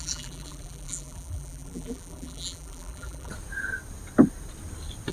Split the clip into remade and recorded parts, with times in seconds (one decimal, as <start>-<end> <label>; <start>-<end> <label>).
0.0-3.3 remade; 3.3-5.1 recorded